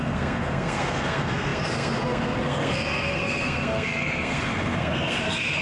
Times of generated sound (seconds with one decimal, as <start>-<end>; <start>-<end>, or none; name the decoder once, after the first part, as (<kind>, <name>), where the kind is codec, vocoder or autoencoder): 0.0-5.6 (codec, SNAC)